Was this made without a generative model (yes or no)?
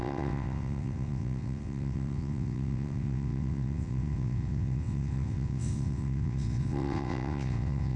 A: no